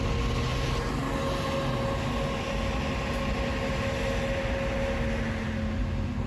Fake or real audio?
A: real